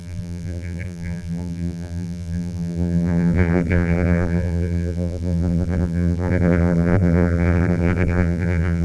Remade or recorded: remade